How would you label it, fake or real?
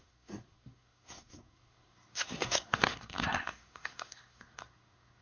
fake